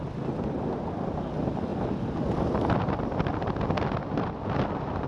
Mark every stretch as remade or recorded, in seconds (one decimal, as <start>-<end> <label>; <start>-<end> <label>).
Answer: 0.0-3.3 recorded; 3.3-3.8 remade; 3.8-5.1 recorded